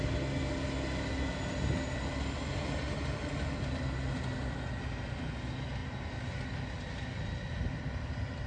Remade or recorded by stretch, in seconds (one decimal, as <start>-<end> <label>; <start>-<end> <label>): 0.0-8.5 recorded